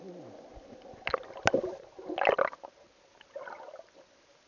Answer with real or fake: real